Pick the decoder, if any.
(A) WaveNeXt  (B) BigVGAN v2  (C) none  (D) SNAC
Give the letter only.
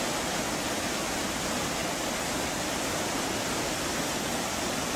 C